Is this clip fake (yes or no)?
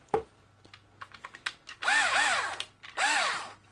no